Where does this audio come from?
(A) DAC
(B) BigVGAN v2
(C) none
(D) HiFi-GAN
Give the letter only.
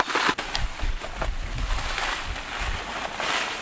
C